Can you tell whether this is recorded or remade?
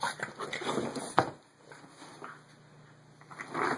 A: recorded